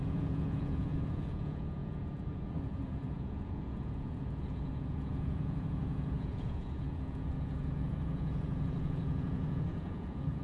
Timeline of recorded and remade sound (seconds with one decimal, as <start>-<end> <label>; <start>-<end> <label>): 0.0-10.4 remade